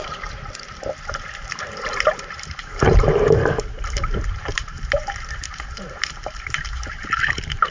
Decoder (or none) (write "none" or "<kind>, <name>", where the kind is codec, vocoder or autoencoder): vocoder, BigVGAN v2